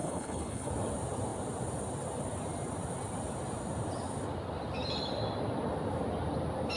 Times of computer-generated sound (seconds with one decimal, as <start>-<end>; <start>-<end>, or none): 0.0-0.7